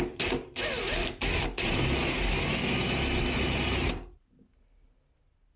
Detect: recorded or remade recorded